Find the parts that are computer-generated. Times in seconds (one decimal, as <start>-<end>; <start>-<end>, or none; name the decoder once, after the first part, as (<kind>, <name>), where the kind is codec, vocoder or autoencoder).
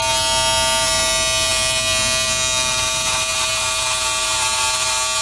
none